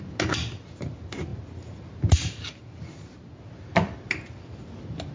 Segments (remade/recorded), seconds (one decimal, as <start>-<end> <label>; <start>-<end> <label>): 0.0-5.1 recorded

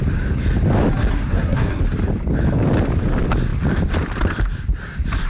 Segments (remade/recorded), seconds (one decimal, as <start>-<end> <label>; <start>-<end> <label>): 0.0-1.1 recorded; 1.1-1.8 remade; 1.8-5.3 recorded

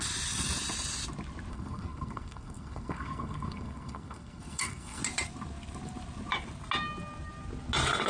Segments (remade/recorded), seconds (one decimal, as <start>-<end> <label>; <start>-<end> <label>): 0.0-1.5 recorded; 1.5-5.0 remade; 5.0-8.1 recorded

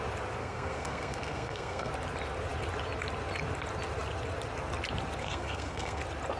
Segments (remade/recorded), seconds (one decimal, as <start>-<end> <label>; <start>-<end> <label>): 0.0-0.4 recorded; 0.4-1.9 remade; 1.9-5.2 recorded; 5.2-6.0 remade; 6.0-6.4 recorded

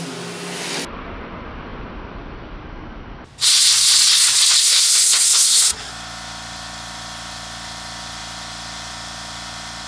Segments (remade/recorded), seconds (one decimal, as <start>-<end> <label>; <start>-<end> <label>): 0.0-4.6 recorded; 4.6-5.9 remade; 5.9-9.9 recorded